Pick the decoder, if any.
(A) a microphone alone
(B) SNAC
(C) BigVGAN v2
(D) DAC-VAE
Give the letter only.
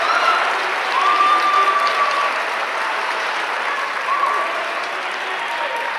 C